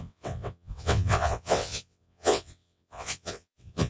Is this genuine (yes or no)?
no